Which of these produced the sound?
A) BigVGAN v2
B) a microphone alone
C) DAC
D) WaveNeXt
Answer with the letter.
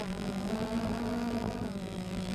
A